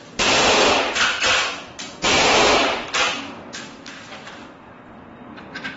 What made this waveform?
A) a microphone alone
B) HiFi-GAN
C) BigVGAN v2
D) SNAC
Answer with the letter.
C